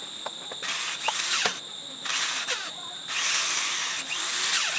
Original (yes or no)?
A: yes